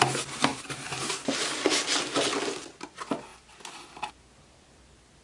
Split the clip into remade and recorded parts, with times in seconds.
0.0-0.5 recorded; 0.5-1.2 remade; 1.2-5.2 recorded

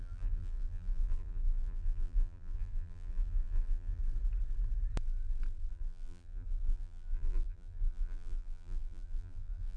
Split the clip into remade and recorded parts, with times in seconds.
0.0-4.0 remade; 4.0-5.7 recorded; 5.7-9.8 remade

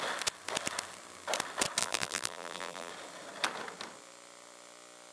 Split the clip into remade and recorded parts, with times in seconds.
0.0-1.8 recorded; 1.8-2.9 remade; 2.9-5.1 recorded

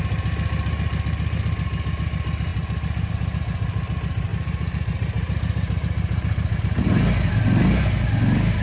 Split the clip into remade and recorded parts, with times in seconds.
0.0-2.5 recorded; 2.5-3.1 remade; 3.1-4.3 recorded; 4.3-6.6 remade; 6.6-8.6 recorded

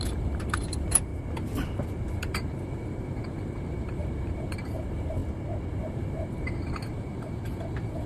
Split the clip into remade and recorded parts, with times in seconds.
0.0-1.1 remade; 1.1-2.1 recorded; 2.1-5.2 remade; 5.2-5.7 recorded; 5.7-8.1 remade

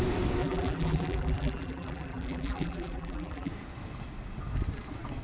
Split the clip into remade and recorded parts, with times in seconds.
0.0-0.4 recorded; 0.4-3.5 remade; 3.5-5.2 recorded

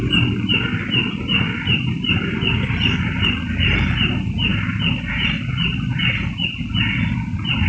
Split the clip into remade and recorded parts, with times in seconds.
0.0-7.7 recorded

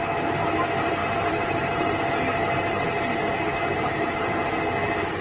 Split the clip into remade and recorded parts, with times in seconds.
0.0-1.0 recorded; 1.0-2.0 remade; 2.0-3.7 recorded; 3.7-4.7 remade; 4.7-5.2 recorded